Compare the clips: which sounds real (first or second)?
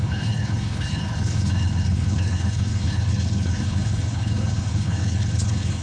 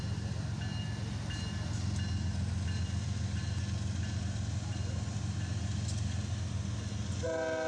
second